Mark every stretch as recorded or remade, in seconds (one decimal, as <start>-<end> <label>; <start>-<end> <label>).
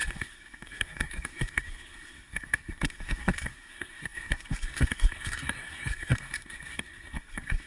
0.0-7.7 remade